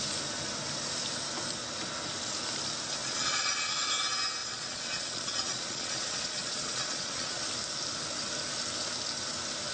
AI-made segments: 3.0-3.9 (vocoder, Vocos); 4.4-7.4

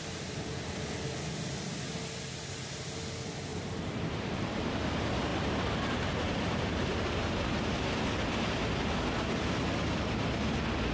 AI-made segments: 3.5-4.8 (vocoder, BigVGAN v2); 5.3-8.3

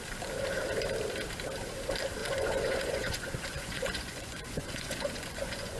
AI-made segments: 2.2-5.8 (vocoder, Vocos)

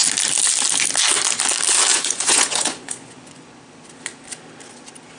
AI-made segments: 1.9-3.6 (vocoder, Vocos)

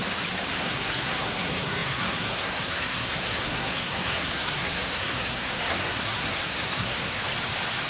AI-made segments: 0.6-7.2 (codec, SNAC)

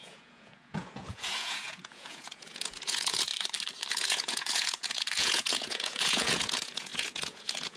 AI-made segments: 0.0-3.3 (vocoder, Vocos); 3.9-7.8